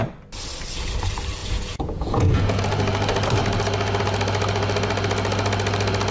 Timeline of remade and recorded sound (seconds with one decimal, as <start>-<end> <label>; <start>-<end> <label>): 0.0-1.4 recorded; 1.4-2.6 remade; 2.6-6.1 recorded